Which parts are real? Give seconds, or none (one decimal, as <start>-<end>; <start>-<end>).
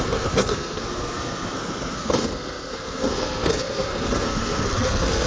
none